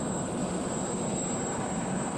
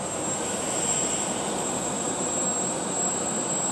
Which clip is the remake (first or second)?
first